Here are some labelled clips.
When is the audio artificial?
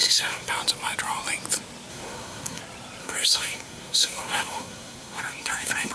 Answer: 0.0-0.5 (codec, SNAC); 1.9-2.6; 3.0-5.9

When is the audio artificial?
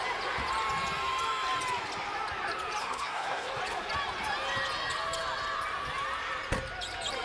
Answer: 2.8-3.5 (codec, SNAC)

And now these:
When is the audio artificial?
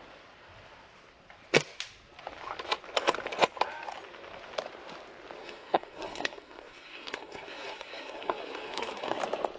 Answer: 5.4-9.2 (codec, SNAC)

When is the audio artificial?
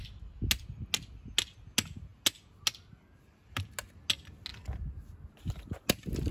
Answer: none